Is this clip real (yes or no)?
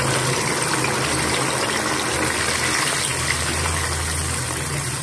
yes